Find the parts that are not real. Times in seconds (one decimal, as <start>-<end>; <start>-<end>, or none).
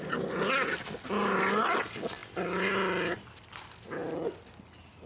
2.2-3.5; 4.0-5.1